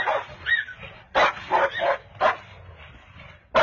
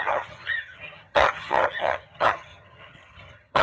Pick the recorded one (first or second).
first